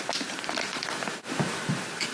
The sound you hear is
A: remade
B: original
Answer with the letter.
B